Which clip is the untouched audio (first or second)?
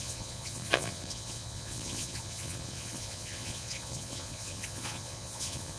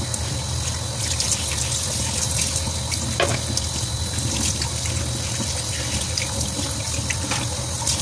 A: second